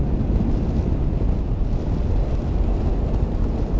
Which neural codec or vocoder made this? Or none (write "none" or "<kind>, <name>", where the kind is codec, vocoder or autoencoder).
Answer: none